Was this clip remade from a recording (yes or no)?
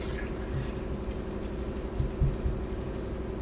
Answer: no